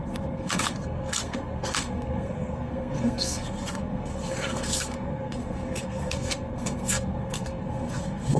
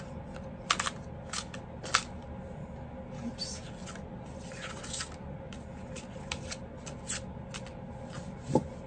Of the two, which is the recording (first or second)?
second